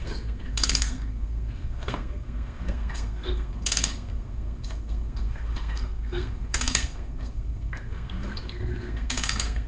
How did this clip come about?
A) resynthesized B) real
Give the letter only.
A